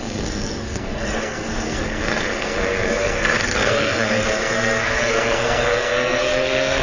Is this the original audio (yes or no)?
no